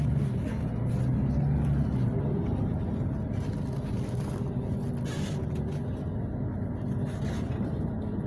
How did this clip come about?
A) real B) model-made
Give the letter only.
A